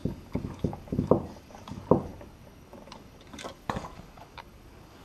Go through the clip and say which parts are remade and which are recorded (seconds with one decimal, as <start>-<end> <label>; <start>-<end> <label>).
0.0-5.0 remade

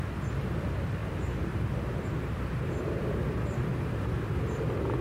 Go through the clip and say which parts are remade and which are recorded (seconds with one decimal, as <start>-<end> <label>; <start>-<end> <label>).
0.0-1.0 recorded; 1.0-3.0 remade; 3.0-5.0 recorded